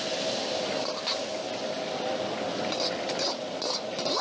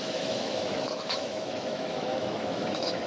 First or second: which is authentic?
first